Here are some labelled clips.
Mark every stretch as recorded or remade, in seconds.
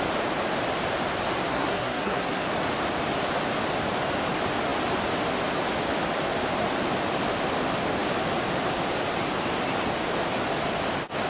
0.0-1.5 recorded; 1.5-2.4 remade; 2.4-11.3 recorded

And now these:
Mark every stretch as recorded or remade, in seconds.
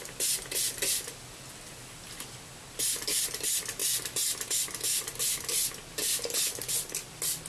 0.0-7.5 recorded